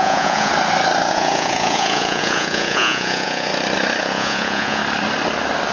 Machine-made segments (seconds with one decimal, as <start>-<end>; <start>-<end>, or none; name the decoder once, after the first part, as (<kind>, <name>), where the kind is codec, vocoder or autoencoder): 0.0-0.5 (vocoder, Vocos); 1.1-3.5; 4.0-4.8